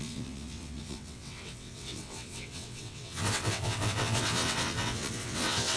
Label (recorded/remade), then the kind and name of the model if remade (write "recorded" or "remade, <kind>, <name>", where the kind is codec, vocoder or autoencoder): remade, vocoder, WaveNeXt